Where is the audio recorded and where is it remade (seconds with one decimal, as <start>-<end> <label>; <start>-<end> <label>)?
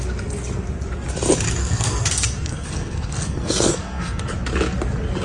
0.0-1.6 recorded; 1.6-4.2 remade; 4.2-5.2 recorded